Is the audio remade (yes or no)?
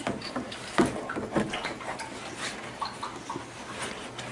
no